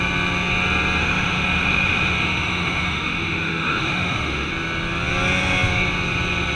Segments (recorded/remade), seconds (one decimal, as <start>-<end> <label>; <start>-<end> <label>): 0.0-1.0 recorded; 1.0-4.5 remade; 4.5-6.6 recorded